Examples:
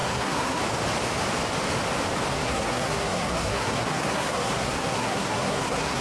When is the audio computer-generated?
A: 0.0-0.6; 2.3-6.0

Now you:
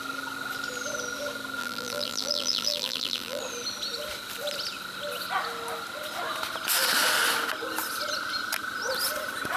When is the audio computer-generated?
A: 1.6-3.4

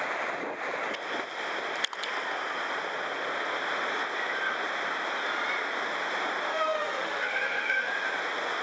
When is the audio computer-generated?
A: 6.5-7.9

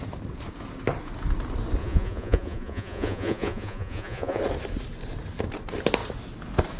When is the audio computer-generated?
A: 1.8-4.4

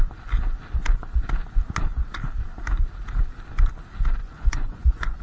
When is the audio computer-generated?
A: 4.2-5.2

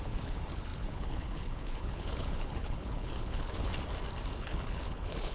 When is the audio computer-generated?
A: 0.0-3.7; 4.4-5.3